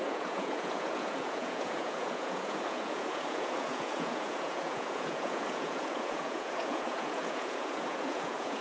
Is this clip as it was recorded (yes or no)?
no